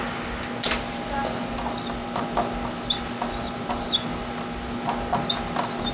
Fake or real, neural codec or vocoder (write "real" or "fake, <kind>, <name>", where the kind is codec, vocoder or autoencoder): real